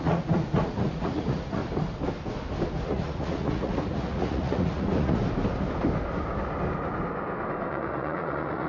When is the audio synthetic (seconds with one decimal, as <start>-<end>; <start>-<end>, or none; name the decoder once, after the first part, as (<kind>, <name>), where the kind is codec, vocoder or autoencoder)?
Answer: 0.0-1.6 (vocoder, Vocos); 2.8-5.2; 7.7-8.7